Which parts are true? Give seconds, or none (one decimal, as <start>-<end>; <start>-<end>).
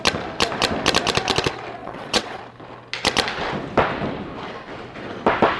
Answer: 0.0-1.8; 2.4-5.6